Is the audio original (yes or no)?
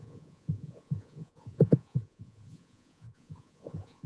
no